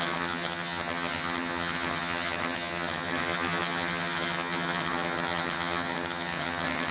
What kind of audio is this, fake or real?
fake